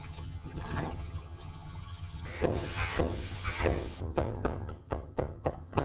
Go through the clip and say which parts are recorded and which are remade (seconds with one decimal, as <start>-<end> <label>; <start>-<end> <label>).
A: 0.0-5.8 remade

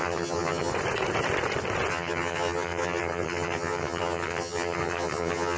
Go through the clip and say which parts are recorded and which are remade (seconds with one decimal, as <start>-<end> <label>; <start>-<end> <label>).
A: 0.0-0.7 remade; 0.7-1.9 recorded; 1.9-5.6 remade